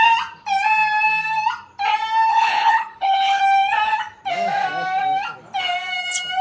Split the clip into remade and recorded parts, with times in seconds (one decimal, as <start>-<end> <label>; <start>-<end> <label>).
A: 0.0-2.3 recorded; 2.3-3.4 remade; 3.4-6.4 recorded

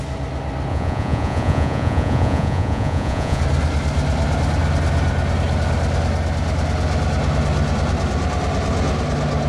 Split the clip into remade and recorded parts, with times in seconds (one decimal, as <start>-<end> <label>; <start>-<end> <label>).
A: 0.0-0.7 recorded; 0.7-3.4 remade; 3.4-9.5 recorded

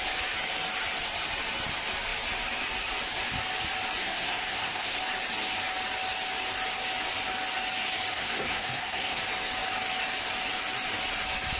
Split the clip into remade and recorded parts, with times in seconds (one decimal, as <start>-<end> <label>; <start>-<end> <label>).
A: 0.0-4.0 recorded; 4.0-5.0 remade; 5.0-8.1 recorded; 8.1-9.2 remade; 9.2-11.6 recorded

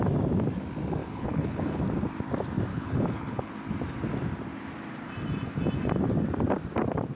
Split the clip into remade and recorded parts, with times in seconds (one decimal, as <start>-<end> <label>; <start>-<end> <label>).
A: 0.0-1.0 recorded; 1.0-1.8 remade; 1.8-2.7 recorded; 2.7-3.5 remade; 3.5-7.2 recorded

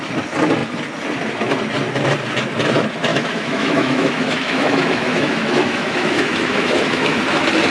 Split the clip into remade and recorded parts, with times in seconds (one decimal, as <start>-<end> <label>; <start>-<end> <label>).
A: 0.0-3.1 recorded; 3.1-7.2 remade; 7.2-7.7 recorded

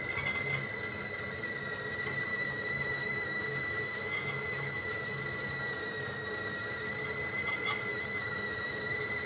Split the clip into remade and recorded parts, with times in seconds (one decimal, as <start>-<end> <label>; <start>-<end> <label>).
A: 0.0-2.3 recorded; 2.3-5.2 remade; 5.2-7.9 recorded; 7.9-8.8 remade; 8.8-9.3 recorded

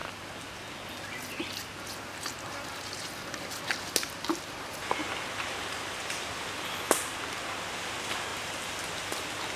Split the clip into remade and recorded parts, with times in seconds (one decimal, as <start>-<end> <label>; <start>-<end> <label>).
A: 0.0-8.3 recorded; 8.3-8.8 remade; 8.8-9.6 recorded

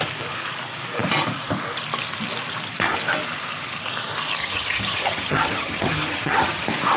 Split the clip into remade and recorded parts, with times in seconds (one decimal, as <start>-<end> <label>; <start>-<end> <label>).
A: 0.0-4.4 recorded; 4.4-6.6 remade; 6.6-7.0 recorded